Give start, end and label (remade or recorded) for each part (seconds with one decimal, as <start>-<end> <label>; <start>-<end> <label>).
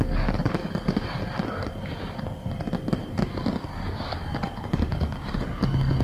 0.0-1.2 remade; 1.2-3.5 recorded; 3.5-6.0 remade